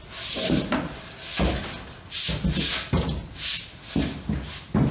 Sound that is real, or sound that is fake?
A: real